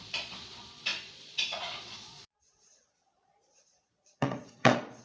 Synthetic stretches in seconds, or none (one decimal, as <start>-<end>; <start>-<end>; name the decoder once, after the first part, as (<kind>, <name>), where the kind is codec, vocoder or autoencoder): 0.0-5.0 (vocoder, Vocos)